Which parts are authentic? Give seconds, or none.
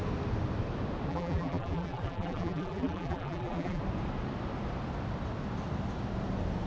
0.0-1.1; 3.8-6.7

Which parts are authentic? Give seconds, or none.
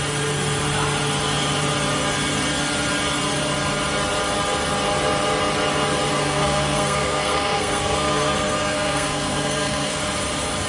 0.0-6.2; 10.0-10.7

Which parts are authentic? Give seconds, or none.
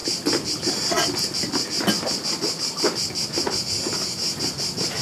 0.0-5.0